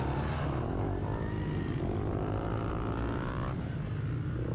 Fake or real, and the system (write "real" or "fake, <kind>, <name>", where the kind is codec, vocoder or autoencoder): real